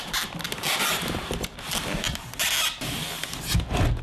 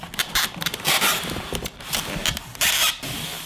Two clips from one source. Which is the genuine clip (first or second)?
first